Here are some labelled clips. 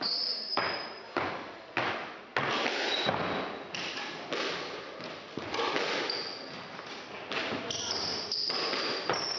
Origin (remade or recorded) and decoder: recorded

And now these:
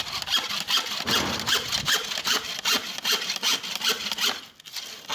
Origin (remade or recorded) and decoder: recorded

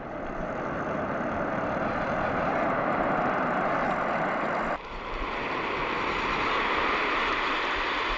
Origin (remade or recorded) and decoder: recorded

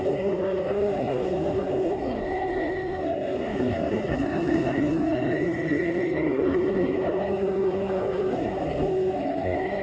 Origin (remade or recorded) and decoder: remade, codec, SNAC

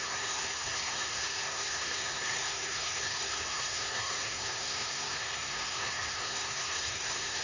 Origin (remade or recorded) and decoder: remade, codec, SNAC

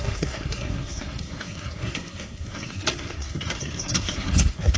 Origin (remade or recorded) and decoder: remade, codec, SNAC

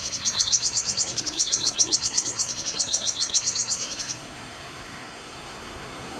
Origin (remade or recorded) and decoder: remade, codec, SNAC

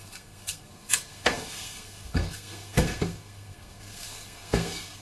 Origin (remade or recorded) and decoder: remade, codec, SNAC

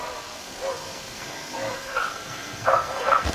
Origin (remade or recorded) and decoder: remade, codec, SNAC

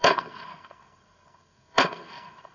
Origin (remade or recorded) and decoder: remade, codec, SNAC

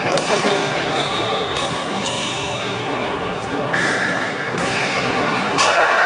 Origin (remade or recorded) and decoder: remade, codec, SNAC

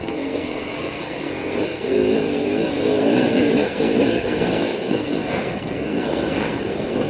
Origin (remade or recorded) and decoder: remade, codec, SNAC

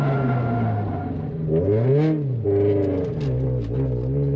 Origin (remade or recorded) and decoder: recorded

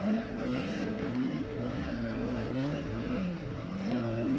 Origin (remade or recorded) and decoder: remade, codec, SNAC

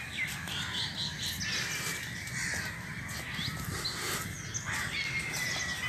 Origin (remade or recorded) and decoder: recorded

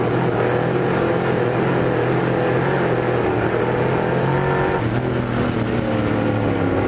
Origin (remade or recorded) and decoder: recorded